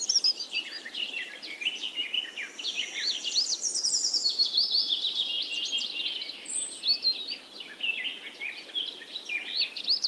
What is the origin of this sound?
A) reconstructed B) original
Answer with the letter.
B